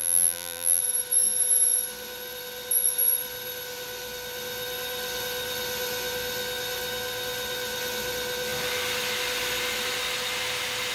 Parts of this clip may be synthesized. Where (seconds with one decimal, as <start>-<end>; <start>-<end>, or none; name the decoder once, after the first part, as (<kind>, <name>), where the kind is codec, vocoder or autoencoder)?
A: 0.0-0.8 (vocoder, BigVGAN v2)